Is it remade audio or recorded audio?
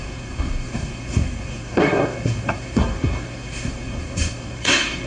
remade